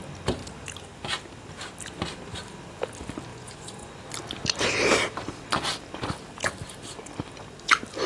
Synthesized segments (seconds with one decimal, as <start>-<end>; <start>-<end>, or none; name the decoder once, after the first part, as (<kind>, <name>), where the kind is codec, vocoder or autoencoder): 3.3-4.0 (vocoder, Vocos)